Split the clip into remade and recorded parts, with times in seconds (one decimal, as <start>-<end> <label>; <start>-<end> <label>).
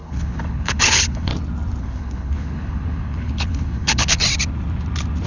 0.0-1.3 remade; 1.3-1.8 recorded; 1.8-4.2 remade; 4.2-5.3 recorded